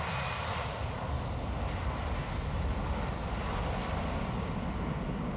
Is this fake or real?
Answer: real